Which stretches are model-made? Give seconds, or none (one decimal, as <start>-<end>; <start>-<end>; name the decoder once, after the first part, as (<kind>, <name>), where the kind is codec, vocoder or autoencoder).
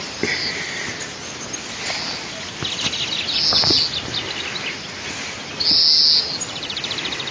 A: none